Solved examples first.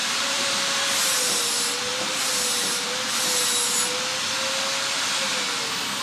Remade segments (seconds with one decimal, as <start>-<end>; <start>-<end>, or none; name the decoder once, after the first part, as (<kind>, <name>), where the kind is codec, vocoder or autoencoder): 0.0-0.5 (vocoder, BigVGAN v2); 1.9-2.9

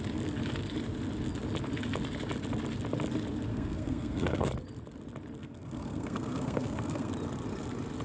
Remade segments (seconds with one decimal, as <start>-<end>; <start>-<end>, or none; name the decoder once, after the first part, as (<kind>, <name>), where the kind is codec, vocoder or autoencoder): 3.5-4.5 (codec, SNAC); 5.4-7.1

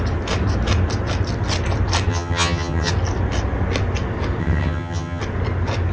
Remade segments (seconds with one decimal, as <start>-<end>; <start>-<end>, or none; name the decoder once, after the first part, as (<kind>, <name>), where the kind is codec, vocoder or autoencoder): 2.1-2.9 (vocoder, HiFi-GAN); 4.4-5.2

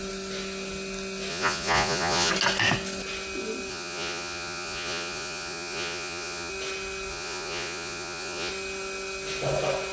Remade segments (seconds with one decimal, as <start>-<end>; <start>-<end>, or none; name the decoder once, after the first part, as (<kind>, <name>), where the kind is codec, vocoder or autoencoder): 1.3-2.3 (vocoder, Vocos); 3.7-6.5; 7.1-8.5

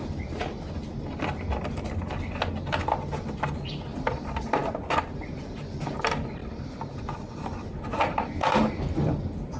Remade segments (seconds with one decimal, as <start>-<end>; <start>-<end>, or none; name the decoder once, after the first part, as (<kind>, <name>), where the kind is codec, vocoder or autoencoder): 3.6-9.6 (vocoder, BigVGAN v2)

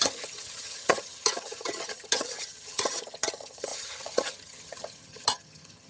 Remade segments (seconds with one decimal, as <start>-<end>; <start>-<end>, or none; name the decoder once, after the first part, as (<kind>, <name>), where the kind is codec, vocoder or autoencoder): 0.0-5.9 (vocoder, HiFi-GAN)